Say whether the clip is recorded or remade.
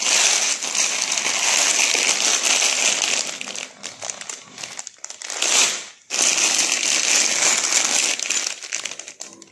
recorded